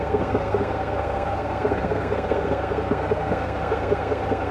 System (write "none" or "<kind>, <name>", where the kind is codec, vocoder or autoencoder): codec, SNAC